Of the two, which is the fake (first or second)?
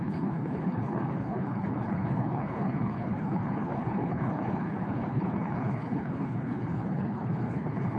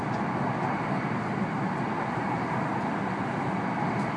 first